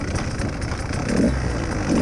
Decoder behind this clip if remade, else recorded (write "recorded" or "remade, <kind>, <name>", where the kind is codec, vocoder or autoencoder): recorded